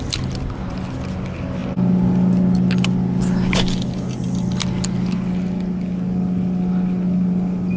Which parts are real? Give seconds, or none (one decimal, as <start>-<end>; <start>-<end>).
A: 0.0-7.8